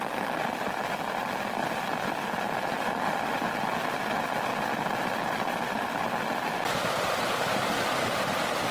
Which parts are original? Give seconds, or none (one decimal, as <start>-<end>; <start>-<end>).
0.0-6.8; 7.9-8.7